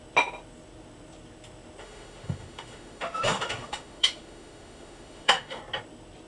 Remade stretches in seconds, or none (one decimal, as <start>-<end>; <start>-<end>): 1.8-5.6